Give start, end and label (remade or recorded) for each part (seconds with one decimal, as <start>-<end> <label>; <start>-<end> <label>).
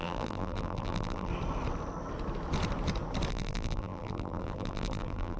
0.0-1.3 remade; 1.3-3.3 recorded; 3.3-5.4 remade